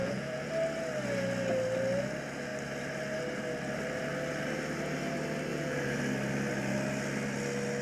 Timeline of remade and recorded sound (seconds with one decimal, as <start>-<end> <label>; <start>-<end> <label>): 0.0-0.5 remade; 0.5-5.5 recorded; 5.5-6.0 remade; 6.0-7.8 recorded